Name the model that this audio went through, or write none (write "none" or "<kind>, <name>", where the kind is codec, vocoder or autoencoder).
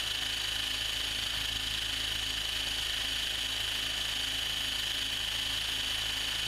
none